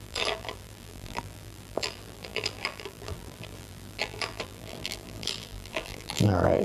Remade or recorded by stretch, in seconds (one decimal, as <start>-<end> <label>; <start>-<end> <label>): 0.0-6.6 remade